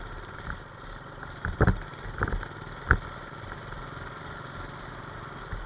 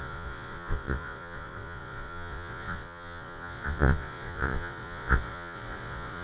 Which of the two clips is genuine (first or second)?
first